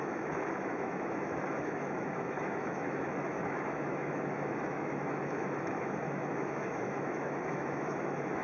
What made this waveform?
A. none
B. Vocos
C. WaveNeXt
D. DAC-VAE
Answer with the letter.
D